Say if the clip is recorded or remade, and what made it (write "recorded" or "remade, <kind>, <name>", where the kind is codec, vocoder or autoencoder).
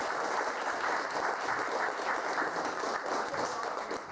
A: remade, vocoder, BigVGAN v2